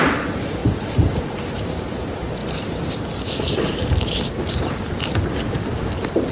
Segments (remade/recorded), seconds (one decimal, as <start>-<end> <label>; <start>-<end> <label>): 0.0-0.6 recorded; 0.6-1.2 remade; 1.2-6.3 recorded